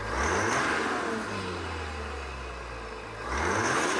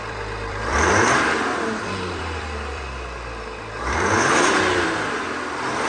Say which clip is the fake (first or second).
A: second